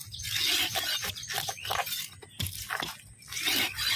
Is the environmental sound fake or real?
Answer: real